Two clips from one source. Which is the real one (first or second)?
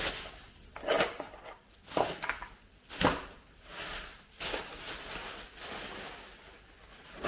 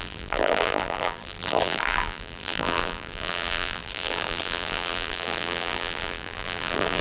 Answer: first